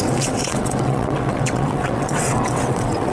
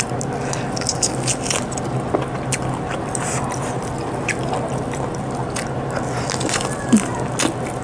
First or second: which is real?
second